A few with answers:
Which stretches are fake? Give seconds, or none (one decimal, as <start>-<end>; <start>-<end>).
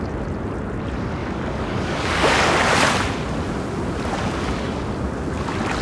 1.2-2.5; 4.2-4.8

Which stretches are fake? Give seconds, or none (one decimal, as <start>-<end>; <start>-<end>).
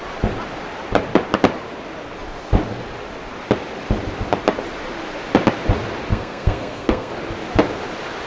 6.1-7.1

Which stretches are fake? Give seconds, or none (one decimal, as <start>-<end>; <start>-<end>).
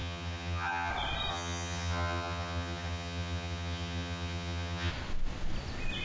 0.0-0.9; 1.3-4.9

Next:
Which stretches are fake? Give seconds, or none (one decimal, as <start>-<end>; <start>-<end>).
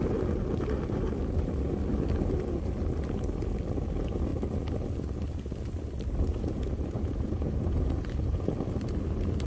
6.3-8.5